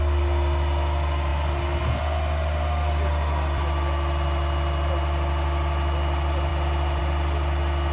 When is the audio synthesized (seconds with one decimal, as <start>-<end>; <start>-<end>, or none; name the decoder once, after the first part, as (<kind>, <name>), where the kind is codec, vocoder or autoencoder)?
none